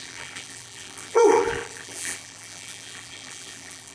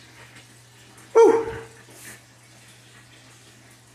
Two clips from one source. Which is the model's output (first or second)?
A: first